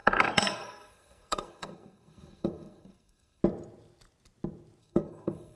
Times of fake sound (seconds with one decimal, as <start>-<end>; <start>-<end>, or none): 0.0-3.4; 4.8-5.6